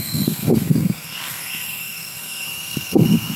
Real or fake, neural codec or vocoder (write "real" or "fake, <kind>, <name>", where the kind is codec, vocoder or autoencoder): fake, codec, SNAC